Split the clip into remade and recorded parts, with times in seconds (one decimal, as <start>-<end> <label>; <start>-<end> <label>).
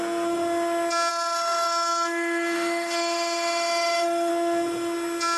0.0-1.1 recorded; 1.1-4.3 remade; 4.3-5.4 recorded